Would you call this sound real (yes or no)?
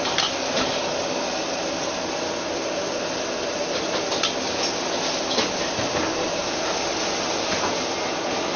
yes